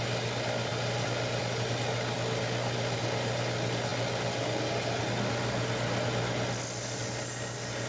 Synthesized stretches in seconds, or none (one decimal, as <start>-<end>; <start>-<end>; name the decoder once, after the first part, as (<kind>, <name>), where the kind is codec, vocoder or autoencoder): none